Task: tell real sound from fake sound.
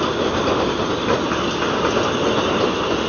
real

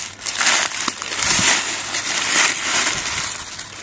real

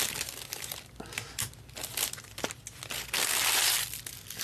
real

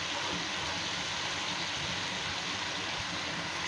real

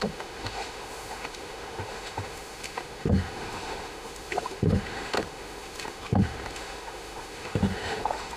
fake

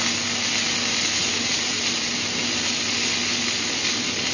real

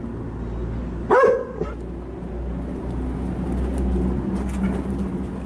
real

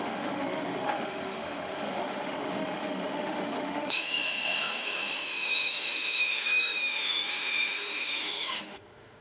fake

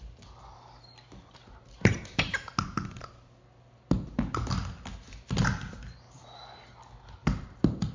real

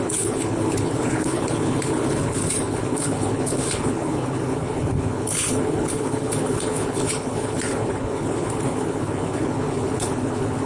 fake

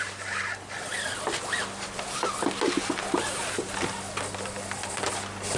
real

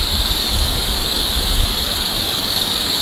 fake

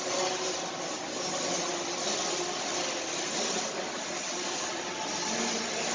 real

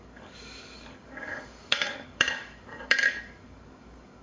fake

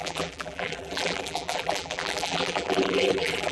fake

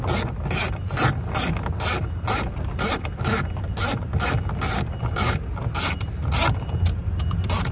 real